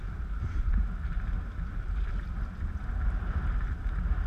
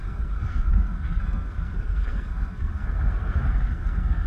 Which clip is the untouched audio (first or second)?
first